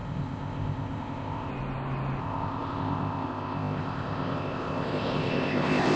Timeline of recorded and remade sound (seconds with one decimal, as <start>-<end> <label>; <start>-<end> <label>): 0.0-1.5 remade; 1.5-2.2 recorded; 2.2-6.0 remade